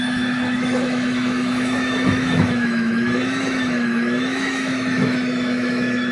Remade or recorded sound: remade